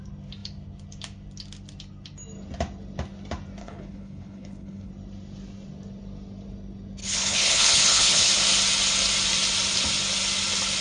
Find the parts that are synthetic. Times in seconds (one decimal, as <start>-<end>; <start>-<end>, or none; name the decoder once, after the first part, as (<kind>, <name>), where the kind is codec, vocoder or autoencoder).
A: 3.6-4.9 (codec, HILCodec); 7.0-8.3